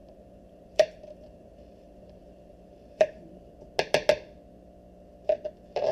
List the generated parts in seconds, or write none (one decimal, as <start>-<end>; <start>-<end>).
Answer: 0.0-3.5